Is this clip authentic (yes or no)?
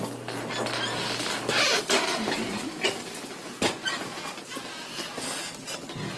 yes